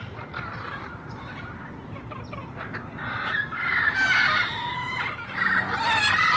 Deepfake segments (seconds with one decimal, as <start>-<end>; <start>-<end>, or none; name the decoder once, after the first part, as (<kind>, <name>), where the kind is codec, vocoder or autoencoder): none